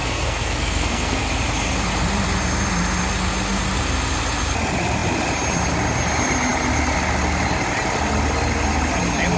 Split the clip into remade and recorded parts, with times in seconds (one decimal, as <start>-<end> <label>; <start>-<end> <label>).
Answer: 0.0-1.2 remade; 1.2-9.4 recorded